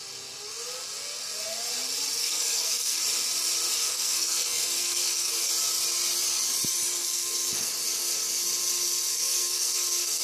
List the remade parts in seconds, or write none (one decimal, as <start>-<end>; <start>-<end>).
2.2-3.0; 3.7-5.5; 7.0-7.7; 9.1-10.2